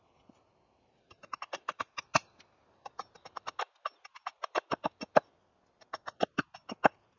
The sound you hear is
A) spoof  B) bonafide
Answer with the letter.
B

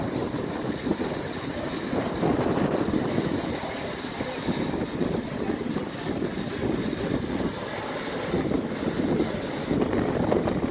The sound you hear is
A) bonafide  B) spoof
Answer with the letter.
A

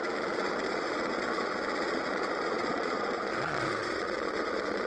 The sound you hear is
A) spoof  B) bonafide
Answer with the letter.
A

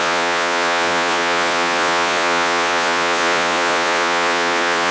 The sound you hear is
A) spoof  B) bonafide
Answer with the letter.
A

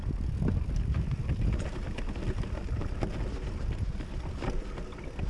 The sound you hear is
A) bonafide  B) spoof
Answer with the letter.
A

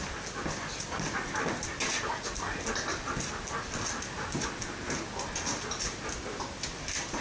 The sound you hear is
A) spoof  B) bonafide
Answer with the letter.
B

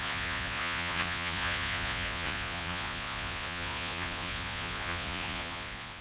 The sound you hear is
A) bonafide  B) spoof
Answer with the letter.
B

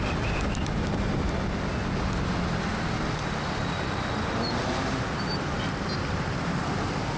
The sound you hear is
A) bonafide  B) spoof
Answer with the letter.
A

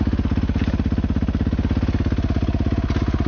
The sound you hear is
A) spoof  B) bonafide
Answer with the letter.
B